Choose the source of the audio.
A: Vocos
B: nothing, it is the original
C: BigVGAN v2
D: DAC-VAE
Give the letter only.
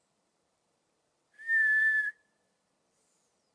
C